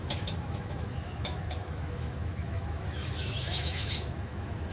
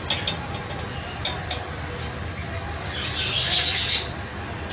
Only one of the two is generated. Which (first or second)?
first